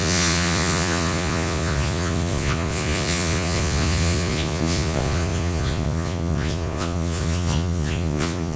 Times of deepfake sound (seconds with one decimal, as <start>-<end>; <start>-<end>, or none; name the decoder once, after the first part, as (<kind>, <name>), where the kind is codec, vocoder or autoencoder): 0.0-8.6 (vocoder, Vocos)